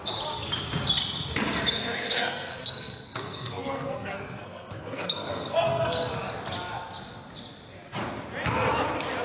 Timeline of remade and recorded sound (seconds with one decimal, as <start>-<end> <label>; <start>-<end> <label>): 0.0-1.8 recorded; 1.8-6.0 remade; 6.0-9.2 recorded